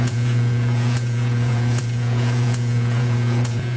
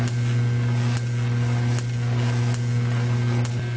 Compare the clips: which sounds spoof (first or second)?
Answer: first